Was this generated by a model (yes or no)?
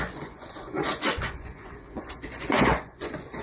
yes